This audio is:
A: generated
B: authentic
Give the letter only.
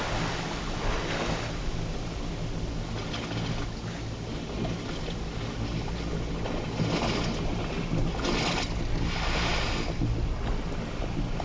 B